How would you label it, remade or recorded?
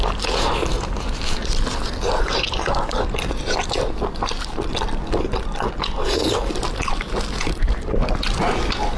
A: recorded